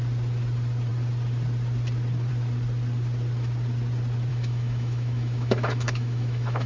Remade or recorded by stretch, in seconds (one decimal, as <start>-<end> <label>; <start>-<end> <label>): 0.0-4.3 recorded; 4.3-6.7 remade